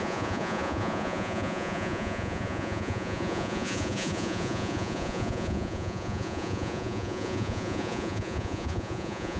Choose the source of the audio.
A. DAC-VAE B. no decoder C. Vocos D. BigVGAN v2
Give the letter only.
C